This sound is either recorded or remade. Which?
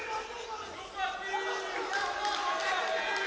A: recorded